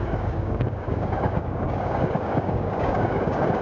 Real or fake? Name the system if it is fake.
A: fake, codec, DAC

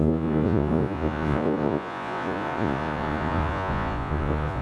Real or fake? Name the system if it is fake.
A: fake, vocoder, Vocos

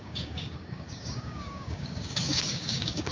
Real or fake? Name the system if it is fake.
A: fake, codec, DAC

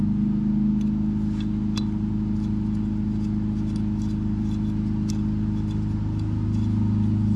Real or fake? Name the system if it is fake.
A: real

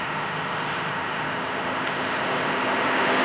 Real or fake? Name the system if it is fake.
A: fake, autoencoder, DAC-VAE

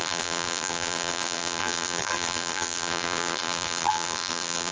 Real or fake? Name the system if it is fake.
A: fake, vocoder, BigVGAN v2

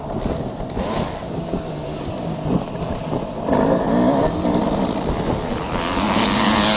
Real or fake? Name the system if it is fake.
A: real